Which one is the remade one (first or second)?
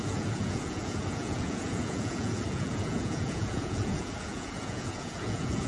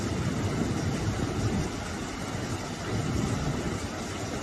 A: first